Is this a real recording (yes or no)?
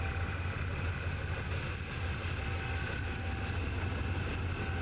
yes